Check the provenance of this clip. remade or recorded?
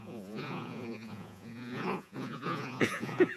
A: remade